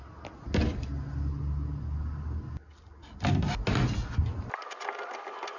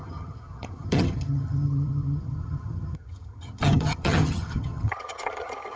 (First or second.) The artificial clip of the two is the second